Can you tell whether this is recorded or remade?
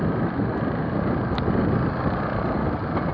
recorded